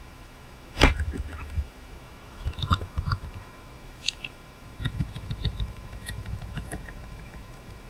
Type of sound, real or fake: fake